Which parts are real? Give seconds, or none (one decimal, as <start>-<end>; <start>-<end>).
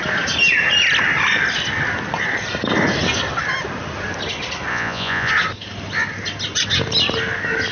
0.0-4.7; 5.3-7.7